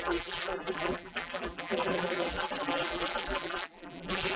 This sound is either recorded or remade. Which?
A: remade